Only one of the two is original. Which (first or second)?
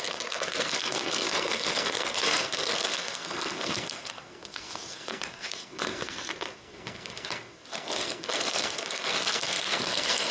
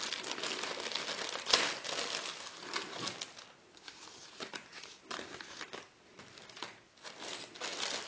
second